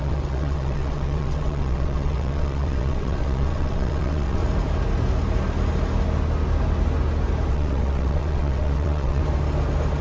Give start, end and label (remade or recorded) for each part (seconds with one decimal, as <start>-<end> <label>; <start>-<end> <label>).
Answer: 0.0-4.4 remade; 4.4-7.5 recorded; 7.5-9.2 remade; 9.2-10.0 recorded